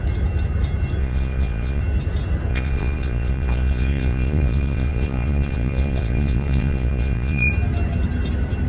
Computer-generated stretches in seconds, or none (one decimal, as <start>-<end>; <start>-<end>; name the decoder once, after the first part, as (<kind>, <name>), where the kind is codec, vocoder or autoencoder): 1.0-1.8 (vocoder, Vocos); 2.5-7.5